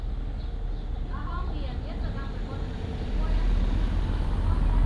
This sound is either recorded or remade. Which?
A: recorded